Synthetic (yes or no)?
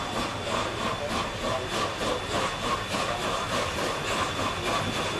no